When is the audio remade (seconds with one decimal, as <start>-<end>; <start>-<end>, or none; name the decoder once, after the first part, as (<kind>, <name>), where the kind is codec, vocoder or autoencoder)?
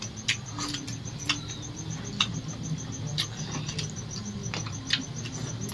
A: none